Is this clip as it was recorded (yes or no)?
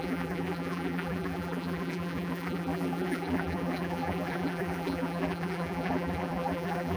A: no